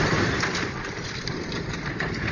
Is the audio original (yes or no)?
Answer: no